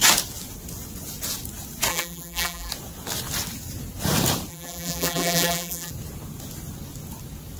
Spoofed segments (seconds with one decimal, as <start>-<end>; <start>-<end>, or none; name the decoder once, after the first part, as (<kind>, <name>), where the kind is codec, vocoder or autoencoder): 1.9-2.7 (vocoder, BigVGAN v2); 4.5-5.9